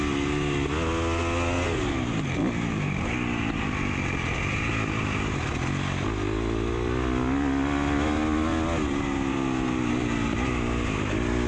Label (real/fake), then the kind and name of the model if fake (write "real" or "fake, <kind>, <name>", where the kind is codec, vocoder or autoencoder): real